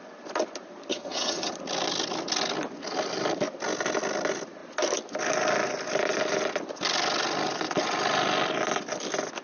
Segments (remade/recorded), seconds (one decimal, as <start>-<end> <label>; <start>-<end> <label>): 0.0-0.9 recorded; 0.9-1.5 remade; 1.5-9.4 recorded